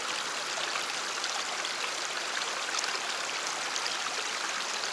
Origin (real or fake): real